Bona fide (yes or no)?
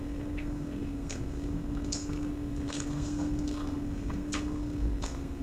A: no